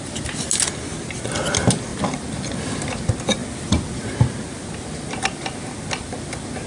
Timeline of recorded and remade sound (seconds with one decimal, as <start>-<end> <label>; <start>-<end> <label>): 0.0-6.7 recorded